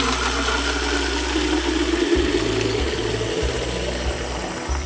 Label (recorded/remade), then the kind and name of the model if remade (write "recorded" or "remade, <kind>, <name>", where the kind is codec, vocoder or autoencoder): recorded